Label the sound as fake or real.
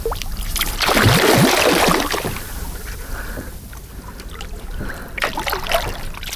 real